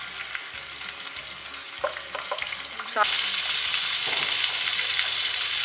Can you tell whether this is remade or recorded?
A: recorded